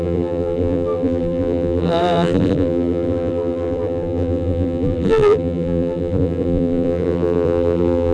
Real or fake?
fake